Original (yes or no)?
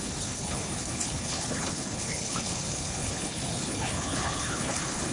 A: no